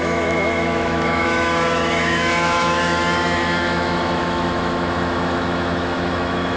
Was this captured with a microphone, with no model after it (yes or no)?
no